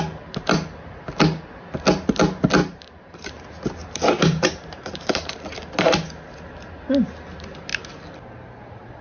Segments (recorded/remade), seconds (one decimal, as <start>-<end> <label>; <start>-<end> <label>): 0.0-2.6 recorded; 2.6-3.3 remade; 3.3-3.8 recorded; 3.8-5.3 remade; 5.3-9.0 recorded